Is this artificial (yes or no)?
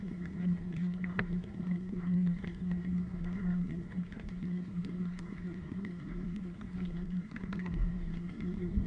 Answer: yes